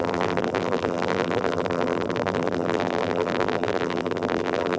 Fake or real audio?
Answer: fake